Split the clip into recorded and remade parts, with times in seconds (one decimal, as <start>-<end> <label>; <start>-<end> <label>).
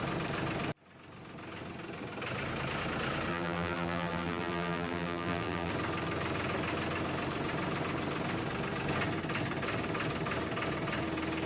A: 0.0-3.3 recorded; 3.3-5.7 remade; 5.7-11.5 recorded